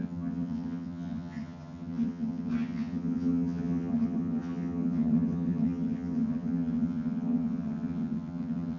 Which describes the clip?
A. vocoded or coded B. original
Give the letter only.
A